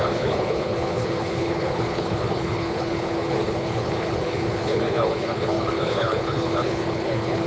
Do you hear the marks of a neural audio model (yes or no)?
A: yes